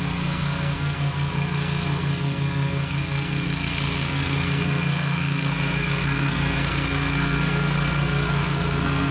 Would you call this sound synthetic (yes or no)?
yes